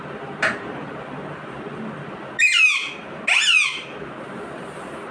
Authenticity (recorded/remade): recorded